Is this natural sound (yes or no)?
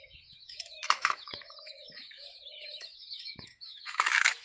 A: no